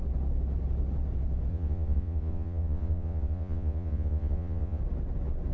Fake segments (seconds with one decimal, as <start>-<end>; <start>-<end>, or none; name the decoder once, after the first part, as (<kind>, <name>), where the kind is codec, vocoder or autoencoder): 1.5-4.8 (vocoder, Vocos)